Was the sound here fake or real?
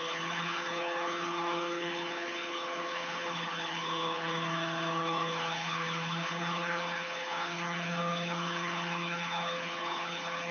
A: fake